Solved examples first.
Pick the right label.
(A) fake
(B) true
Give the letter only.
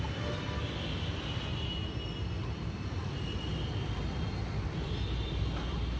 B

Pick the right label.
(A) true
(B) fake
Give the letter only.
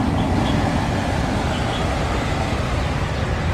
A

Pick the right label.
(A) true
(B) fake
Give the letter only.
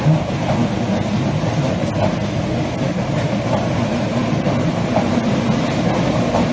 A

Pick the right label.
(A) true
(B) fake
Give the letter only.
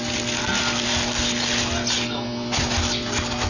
A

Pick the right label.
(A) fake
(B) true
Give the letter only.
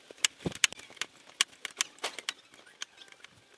B